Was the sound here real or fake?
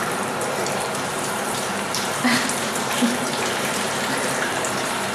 fake